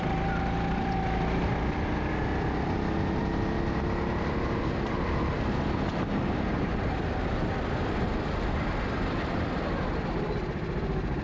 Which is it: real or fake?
real